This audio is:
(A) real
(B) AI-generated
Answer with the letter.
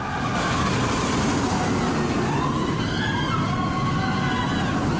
A